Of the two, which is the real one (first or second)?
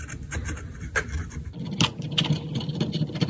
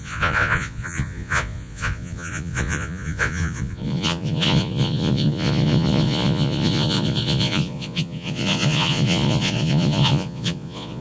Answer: first